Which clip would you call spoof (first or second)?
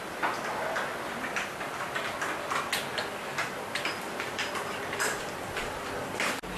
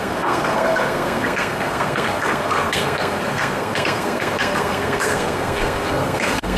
second